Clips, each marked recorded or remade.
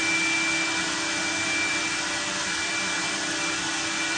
recorded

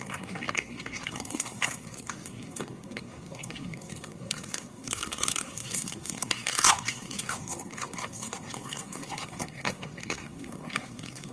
remade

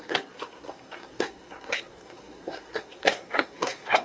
remade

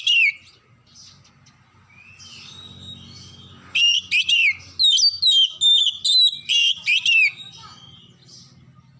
recorded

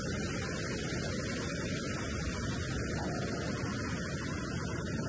recorded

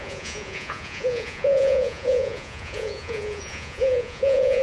remade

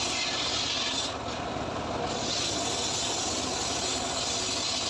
recorded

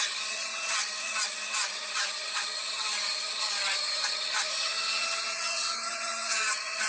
remade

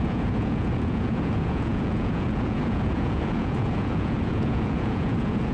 remade